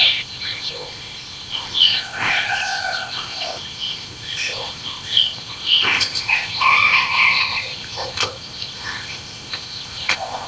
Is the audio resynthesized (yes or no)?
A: yes